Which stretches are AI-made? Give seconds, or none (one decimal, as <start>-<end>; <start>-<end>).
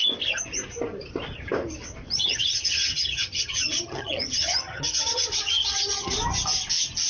2.2-6.1